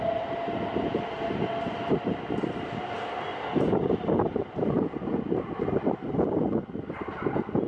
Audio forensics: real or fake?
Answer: real